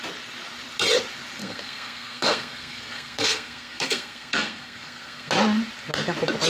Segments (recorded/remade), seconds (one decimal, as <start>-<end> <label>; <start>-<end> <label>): 0.0-1.4 recorded; 1.4-5.3 remade; 5.3-6.5 recorded